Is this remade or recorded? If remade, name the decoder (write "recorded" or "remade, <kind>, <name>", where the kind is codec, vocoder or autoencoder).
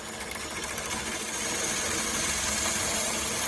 recorded